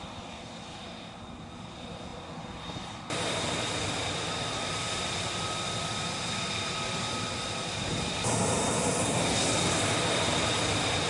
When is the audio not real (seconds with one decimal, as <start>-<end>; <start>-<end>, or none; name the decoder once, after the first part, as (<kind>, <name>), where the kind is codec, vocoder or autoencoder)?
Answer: none